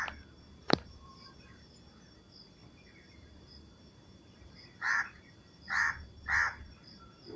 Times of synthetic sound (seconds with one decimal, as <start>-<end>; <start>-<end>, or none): 0.6-1.6; 2.6-5.9